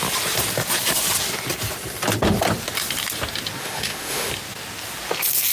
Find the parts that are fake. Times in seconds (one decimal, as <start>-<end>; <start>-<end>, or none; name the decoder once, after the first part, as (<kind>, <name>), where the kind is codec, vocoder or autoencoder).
3.6-4.3 (autoencoder, DAC-VAE)